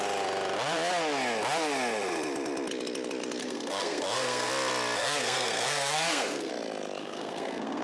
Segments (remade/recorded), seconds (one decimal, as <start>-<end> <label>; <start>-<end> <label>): 0.0-3.4 recorded; 3.4-4.5 remade; 4.5-5.0 recorded; 5.0-6.5 remade; 6.5-7.0 recorded; 7.0-7.8 remade